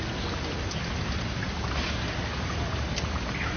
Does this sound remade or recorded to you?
recorded